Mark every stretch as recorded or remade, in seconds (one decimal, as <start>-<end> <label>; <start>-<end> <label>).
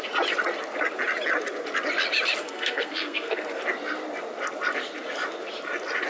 0.0-2.4 recorded; 2.4-3.6 remade; 3.6-6.1 recorded